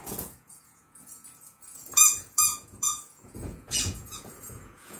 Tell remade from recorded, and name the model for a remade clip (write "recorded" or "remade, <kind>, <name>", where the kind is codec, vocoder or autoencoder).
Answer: remade, vocoder, Vocos